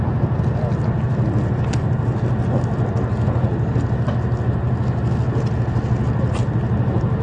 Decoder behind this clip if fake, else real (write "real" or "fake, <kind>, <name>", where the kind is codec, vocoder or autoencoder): real